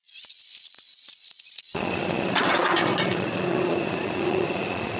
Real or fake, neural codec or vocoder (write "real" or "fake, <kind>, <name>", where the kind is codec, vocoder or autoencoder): fake, vocoder, Vocos